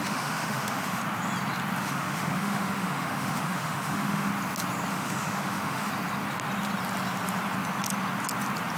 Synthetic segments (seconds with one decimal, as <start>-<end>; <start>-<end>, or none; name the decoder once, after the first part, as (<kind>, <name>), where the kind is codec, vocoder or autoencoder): 0.0-1.0 (autoencoder, DAC-VAE); 1.8-4.3; 4.9-5.9